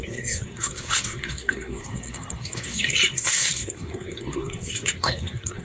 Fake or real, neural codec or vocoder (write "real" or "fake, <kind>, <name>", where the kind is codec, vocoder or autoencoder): fake, codec, SNAC